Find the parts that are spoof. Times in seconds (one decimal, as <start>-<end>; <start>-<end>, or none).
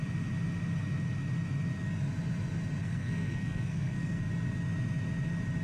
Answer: 2.8-4.3